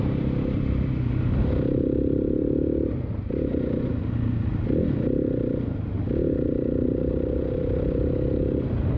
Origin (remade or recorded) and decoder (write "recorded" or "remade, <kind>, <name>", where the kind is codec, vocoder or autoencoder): recorded